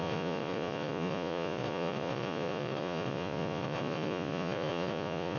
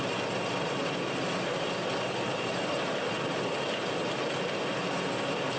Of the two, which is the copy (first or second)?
first